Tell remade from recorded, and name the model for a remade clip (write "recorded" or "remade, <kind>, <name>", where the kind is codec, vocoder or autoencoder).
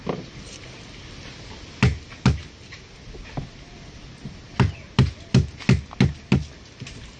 recorded